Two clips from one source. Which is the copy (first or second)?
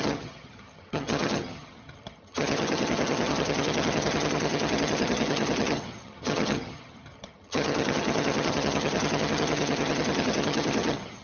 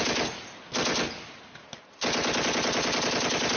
first